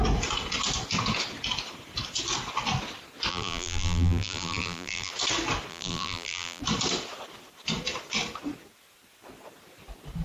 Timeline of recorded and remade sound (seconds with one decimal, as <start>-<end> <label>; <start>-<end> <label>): 0.0-3.3 recorded; 3.3-5.1 remade; 5.1-5.7 recorded; 5.7-6.6 remade; 6.6-10.2 recorded